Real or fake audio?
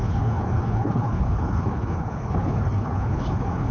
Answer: fake